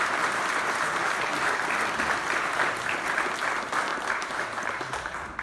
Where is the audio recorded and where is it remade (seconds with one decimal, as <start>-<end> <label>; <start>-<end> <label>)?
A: 0.0-3.9 recorded; 3.9-4.8 remade; 4.8-5.4 recorded